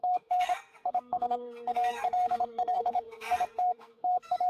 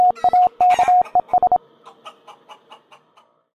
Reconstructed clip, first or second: first